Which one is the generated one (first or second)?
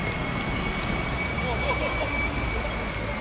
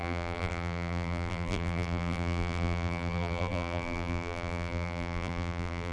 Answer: second